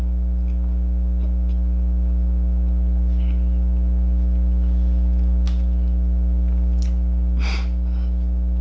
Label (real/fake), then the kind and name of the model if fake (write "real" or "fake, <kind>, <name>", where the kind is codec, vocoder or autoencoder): real